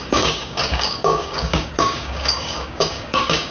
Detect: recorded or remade remade